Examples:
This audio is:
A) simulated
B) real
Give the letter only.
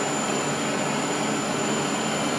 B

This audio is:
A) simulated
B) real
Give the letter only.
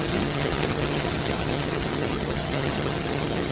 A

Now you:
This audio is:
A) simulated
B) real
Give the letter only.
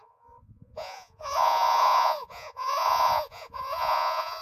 A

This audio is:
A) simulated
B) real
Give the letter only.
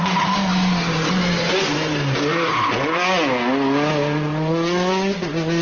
B